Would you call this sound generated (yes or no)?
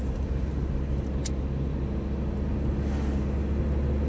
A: no